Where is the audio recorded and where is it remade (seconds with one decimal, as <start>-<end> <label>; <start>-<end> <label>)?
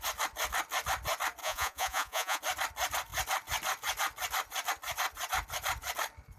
0.0-1.4 recorded; 1.4-2.4 remade; 2.4-6.4 recorded